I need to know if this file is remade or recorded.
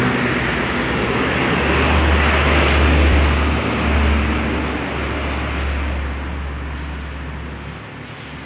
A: recorded